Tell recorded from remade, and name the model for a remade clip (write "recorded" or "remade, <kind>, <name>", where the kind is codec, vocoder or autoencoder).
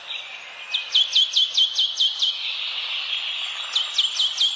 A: recorded